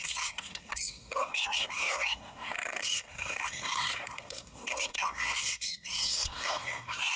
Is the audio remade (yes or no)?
yes